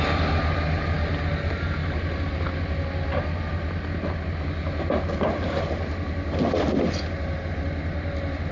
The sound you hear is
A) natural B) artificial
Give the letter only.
A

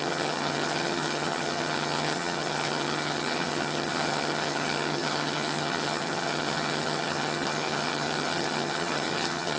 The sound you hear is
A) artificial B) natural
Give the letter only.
A